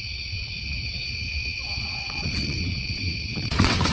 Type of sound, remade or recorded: remade